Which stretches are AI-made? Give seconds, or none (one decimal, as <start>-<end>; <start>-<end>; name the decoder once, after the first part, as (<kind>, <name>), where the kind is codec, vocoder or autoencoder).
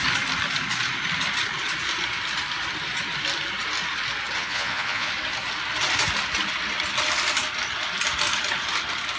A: 4.4-5.1 (vocoder, Vocos)